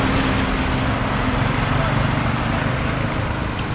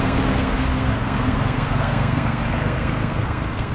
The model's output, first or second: second